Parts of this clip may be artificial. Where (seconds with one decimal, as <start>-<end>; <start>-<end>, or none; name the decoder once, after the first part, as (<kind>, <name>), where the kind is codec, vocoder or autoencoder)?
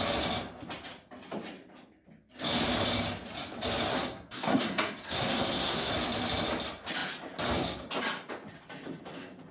3.9-5.9 (codec, SNAC)